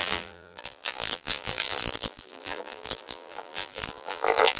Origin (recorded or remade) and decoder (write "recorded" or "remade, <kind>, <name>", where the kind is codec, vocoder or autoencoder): remade, vocoder, BigVGAN v2